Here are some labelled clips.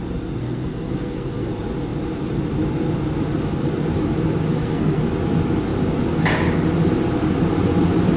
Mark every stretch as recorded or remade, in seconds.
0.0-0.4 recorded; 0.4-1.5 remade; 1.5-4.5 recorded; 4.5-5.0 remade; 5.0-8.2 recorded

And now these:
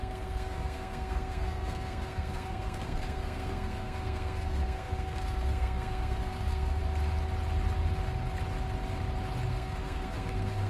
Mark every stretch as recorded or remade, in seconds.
0.0-6.8 remade; 6.8-9.5 recorded; 9.5-10.7 remade